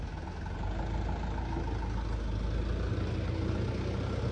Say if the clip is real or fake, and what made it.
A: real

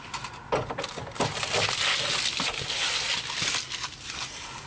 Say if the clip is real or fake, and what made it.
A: real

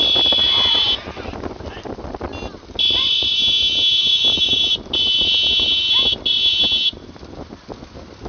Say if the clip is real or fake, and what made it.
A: real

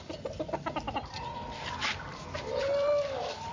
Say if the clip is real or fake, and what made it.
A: fake, vocoder, BigVGAN v2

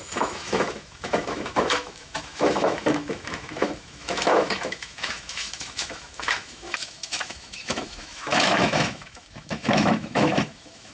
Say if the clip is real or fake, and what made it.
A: fake, autoencoder, DAC-VAE